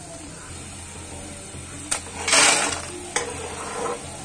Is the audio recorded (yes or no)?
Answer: yes